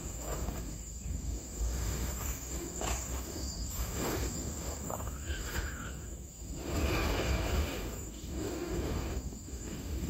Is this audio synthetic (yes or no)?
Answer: yes